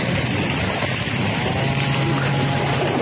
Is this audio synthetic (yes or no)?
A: no